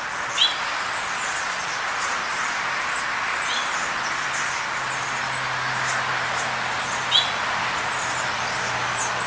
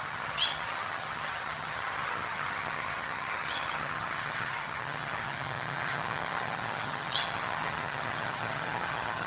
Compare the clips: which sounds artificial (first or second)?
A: second